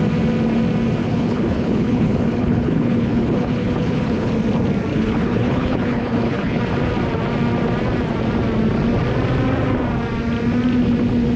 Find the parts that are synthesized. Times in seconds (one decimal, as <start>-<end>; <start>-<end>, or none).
1.0-4.3; 4.9-6.6